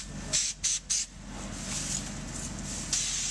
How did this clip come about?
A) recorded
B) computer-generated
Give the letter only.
A